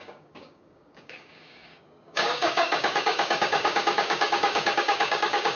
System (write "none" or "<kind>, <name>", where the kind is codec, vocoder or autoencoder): codec, DAC